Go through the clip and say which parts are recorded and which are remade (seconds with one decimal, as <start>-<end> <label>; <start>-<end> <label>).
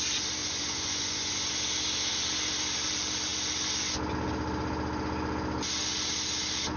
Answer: 0.0-0.4 recorded; 0.4-1.5 remade; 1.5-6.8 recorded